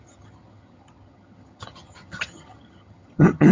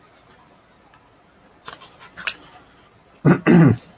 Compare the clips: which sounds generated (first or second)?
first